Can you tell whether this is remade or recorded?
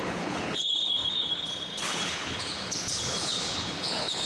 remade